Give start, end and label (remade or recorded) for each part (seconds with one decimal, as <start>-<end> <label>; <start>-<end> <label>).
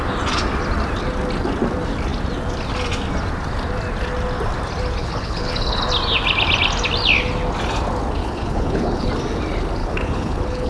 0.0-5.0 recorded; 5.0-5.8 remade; 5.8-8.2 recorded; 8.2-9.1 remade; 9.1-9.8 recorded; 9.8-10.7 remade